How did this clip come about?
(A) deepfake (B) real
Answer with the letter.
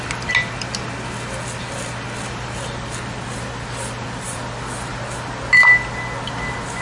B